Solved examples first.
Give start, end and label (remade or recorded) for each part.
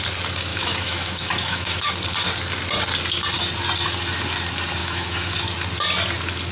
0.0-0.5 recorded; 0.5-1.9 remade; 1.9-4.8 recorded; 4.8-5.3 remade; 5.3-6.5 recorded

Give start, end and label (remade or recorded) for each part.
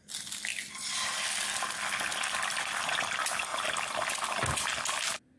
0.0-5.4 recorded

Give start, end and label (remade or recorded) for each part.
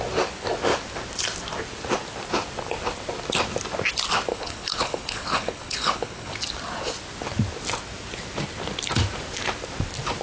0.0-4.3 recorded; 4.3-6.3 remade; 6.3-10.2 recorded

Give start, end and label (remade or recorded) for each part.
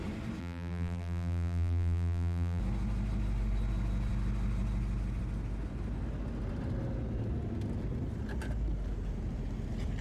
0.0-0.4 recorded; 0.4-2.6 remade; 2.6-10.0 recorded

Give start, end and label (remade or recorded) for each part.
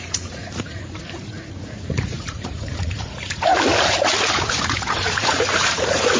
0.0-3.5 remade; 3.5-4.3 recorded; 4.3-6.2 remade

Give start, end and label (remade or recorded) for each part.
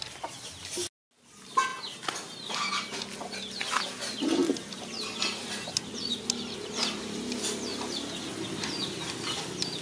0.0-9.8 recorded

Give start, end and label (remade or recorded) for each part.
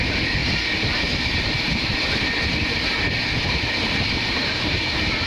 0.0-0.4 remade; 0.4-3.6 recorded; 3.6-5.3 remade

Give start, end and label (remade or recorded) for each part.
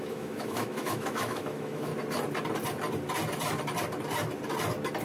0.0-1.9 remade; 1.9-5.0 recorded